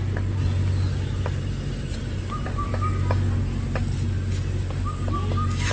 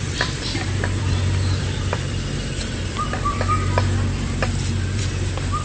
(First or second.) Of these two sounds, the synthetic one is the second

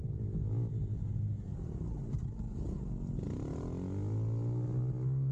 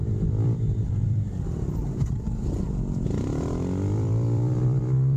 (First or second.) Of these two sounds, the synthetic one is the second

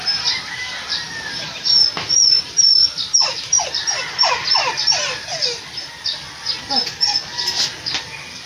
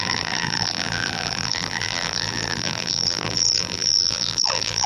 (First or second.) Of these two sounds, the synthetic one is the second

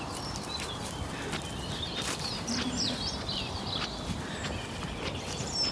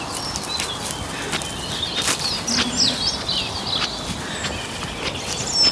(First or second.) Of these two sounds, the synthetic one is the first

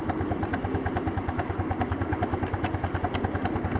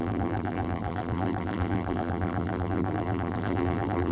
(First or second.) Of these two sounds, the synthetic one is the second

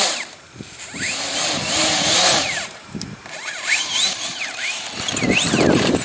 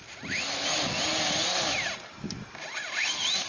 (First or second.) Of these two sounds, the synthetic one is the first